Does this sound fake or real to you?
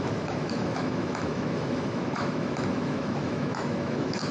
fake